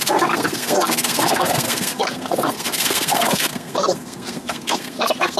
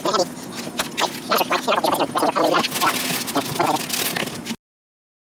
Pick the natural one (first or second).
second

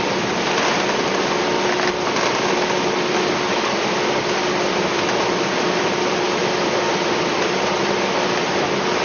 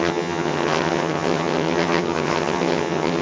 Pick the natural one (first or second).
first